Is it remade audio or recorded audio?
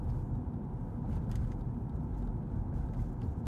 recorded